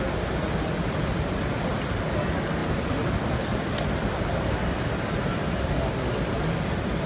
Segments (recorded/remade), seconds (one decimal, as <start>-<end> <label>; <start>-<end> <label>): 0.0-7.1 recorded